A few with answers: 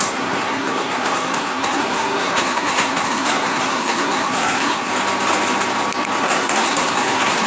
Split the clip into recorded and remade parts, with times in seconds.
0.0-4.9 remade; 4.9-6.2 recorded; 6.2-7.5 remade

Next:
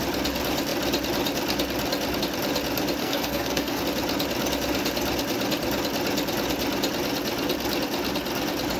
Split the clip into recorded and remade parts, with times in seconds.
0.0-3.0 recorded; 3.0-3.8 remade; 3.8-8.8 recorded

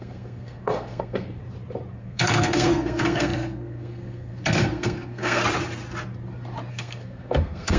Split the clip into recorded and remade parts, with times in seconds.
0.0-1.4 remade; 1.4-2.0 recorded; 2.0-5.4 remade; 5.4-6.7 recorded; 6.7-7.8 remade

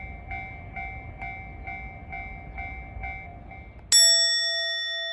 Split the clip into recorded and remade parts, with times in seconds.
0.0-5.1 recorded

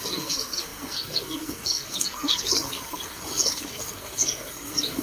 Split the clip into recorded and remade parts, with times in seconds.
0.0-5.0 remade

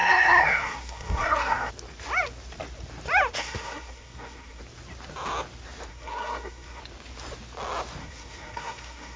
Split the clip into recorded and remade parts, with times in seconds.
0.0-1.7 remade; 1.7-3.4 recorded; 3.4-4.6 remade; 4.6-5.9 recorded; 5.9-6.8 remade; 6.8-8.0 recorded; 8.0-9.2 remade

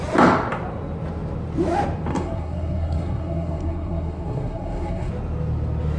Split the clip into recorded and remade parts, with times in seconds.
0.0-2.1 recorded; 2.1-5.1 remade; 5.1-6.0 recorded